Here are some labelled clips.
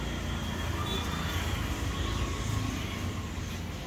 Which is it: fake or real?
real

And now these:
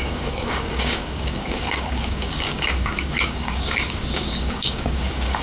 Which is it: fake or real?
fake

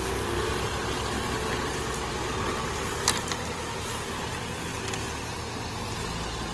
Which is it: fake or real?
real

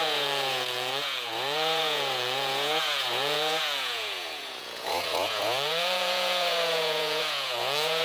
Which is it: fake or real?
fake